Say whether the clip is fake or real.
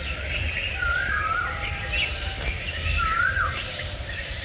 fake